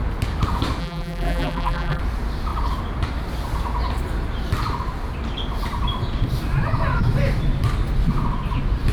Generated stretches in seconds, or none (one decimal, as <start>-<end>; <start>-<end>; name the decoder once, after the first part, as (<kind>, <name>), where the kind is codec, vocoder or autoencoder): 0.8-2.0 (vocoder, BigVGAN v2)